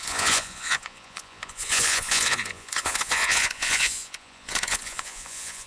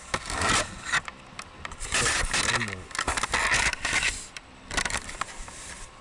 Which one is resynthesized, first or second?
first